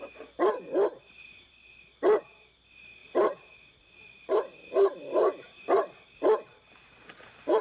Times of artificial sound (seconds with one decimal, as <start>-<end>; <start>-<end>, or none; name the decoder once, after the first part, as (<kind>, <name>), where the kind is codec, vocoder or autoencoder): 3.0-7.6 (vocoder, BigVGAN v2)